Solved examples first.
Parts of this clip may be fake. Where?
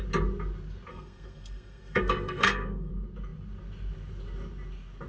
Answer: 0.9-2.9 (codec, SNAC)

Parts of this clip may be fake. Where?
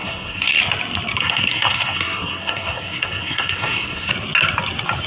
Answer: 0.0-0.6 (codec, SNAC); 1.2-4.1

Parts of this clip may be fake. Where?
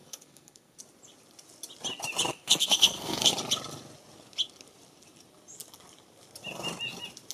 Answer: 0.0-0.8 (codec, SNAC); 2.3-3.3